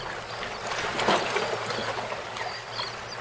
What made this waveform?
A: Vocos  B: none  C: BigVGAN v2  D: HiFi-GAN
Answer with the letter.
B